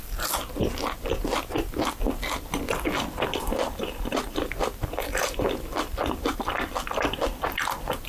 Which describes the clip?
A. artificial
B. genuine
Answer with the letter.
B